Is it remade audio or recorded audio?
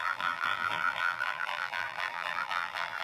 remade